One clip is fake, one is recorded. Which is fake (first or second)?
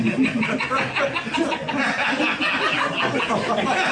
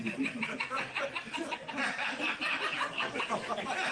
second